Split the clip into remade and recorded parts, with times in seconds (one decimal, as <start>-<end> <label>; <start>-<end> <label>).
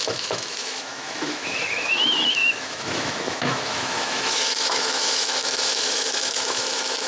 0.0-7.1 remade